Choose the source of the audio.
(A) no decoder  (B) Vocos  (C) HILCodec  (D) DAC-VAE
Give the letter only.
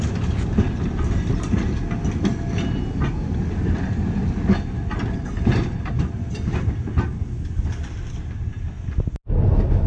A